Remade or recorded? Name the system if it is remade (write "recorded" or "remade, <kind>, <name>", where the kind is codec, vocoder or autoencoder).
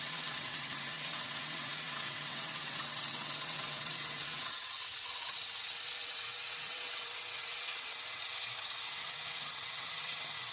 remade, vocoder, WaveNeXt